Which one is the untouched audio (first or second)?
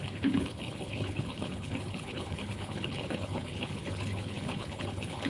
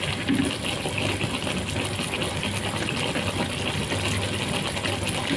second